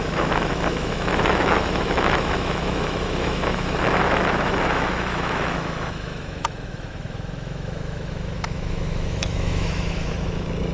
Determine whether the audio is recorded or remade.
remade